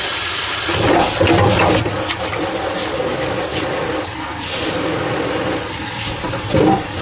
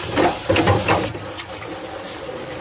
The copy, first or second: second